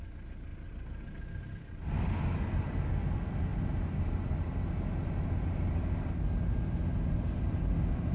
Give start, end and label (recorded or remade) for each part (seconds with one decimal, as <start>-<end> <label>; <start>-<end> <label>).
0.0-8.1 recorded